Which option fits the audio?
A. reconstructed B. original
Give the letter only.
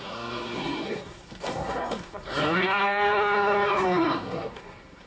A